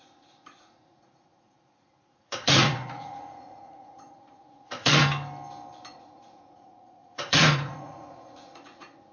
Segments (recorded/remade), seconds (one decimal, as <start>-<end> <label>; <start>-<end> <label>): 0.0-5.0 remade; 5.0-5.9 recorded; 5.9-9.1 remade